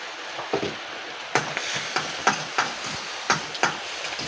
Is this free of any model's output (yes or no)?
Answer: yes